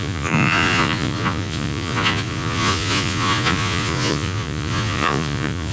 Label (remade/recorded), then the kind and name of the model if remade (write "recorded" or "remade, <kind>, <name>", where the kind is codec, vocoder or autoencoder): remade, vocoder, Vocos